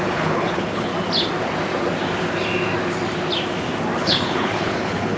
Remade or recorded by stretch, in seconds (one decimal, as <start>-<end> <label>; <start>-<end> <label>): 0.0-0.9 remade; 0.9-4.0 recorded; 4.0-5.2 remade